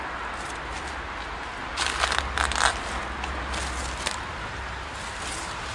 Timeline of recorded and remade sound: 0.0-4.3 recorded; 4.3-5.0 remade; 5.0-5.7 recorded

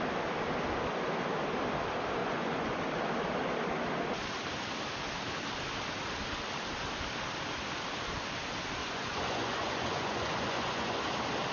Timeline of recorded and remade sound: 0.0-2.2 recorded; 2.2-2.8 remade; 2.8-8.8 recorded; 8.8-11.0 remade; 11.0-11.5 recorded

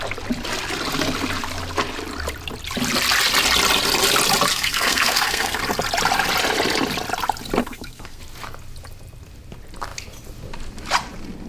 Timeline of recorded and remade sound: 0.0-4.5 recorded; 4.5-5.6 remade; 5.6-7.6 recorded; 7.6-8.2 remade; 8.2-11.5 recorded

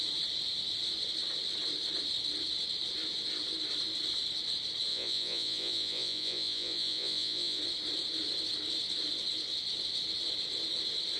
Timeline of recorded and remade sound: 0.0-4.9 recorded; 4.9-7.6 remade; 7.6-11.2 recorded

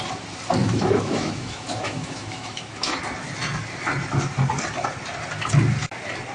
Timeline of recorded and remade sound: 0.0-0.6 recorded; 0.6-3.0 remade; 3.0-6.3 recorded

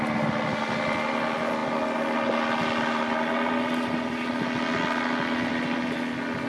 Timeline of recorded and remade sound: 0.0-6.5 recorded